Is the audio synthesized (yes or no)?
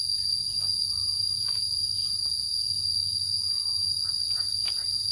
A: no